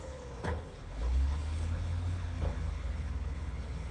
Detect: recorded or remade remade